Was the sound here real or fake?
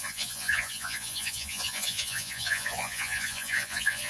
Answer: fake